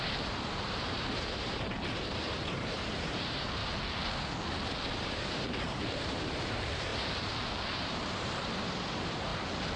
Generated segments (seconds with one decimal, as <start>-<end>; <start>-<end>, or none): 0.0-3.6; 4.9-6.9; 7.6-9.3